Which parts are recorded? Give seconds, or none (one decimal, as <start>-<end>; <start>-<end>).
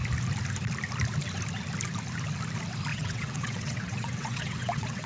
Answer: 0.0-2.9